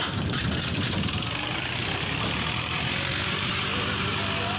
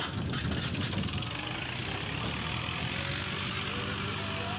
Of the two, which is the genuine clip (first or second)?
second